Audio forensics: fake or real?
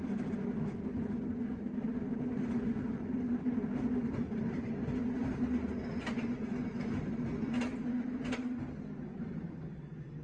real